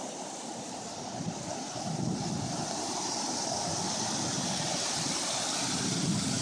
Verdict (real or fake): real